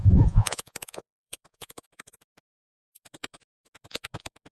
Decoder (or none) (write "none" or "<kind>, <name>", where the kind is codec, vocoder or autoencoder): vocoder, Vocos